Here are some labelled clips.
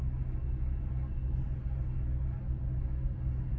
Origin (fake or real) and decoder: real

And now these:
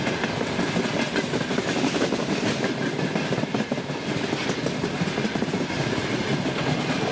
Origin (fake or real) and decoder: real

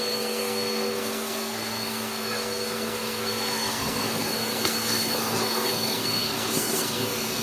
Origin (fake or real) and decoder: fake, codec, SNAC